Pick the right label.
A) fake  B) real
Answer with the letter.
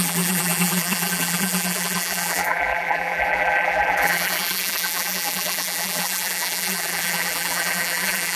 A